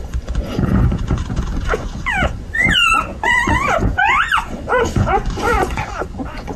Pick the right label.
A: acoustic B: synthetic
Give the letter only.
B